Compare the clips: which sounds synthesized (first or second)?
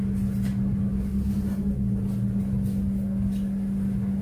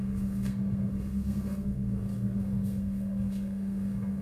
second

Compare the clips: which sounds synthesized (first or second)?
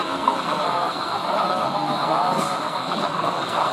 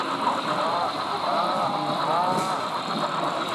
first